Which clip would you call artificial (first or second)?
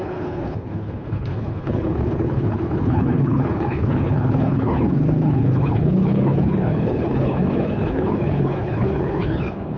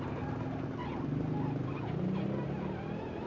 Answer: first